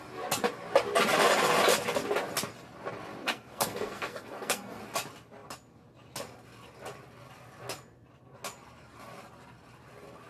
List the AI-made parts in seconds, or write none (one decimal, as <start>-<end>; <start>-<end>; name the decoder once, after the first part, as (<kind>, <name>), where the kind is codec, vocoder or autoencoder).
3.2-4.8 (codec, SNAC)